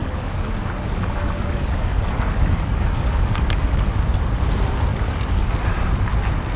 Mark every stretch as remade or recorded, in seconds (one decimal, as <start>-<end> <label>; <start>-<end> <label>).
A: 0.0-3.9 remade; 3.9-4.9 recorded; 4.9-5.5 remade; 5.5-6.6 recorded